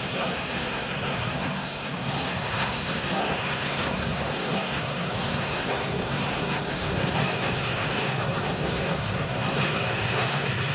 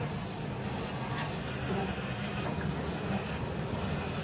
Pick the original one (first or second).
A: second